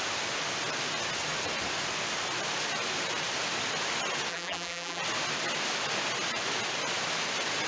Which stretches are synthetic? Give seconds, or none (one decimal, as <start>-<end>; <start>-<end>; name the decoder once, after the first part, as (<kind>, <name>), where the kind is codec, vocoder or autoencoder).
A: 4.3-5.0 (vocoder, BigVGAN v2)